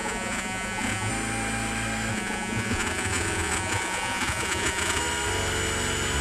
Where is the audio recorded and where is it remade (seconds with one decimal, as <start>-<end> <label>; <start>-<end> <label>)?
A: 0.0-1.1 remade; 1.1-2.1 recorded; 2.1-5.0 remade; 5.0-6.2 recorded